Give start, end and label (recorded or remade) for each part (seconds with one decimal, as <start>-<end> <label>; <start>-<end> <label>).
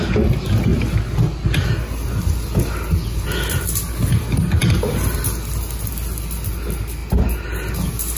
0.0-8.2 recorded